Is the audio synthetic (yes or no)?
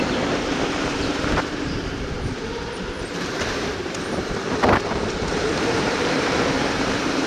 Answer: yes